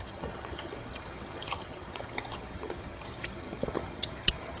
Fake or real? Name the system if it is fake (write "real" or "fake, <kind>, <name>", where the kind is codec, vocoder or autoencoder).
fake, vocoder, HiFi-GAN